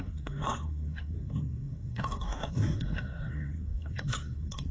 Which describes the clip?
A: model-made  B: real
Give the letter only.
A